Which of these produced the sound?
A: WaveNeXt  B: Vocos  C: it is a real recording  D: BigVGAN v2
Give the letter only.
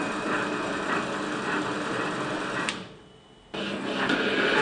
D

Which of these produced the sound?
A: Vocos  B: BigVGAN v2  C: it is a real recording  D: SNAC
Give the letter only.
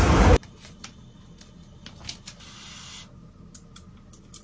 C